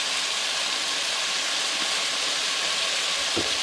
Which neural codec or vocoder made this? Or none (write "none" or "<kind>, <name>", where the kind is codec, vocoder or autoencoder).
none